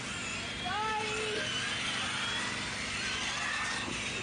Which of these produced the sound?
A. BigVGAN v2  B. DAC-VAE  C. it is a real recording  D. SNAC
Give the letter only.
C